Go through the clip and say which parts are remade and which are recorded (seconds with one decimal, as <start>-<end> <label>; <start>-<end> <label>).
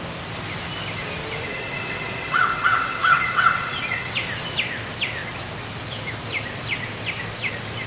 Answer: 0.0-1.5 recorded; 1.5-4.1 remade; 4.1-7.9 recorded